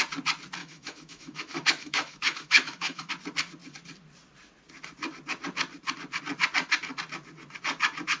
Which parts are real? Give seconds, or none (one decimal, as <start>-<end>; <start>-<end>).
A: 0.0-0.6; 3.1-8.2